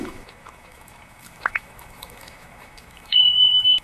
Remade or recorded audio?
remade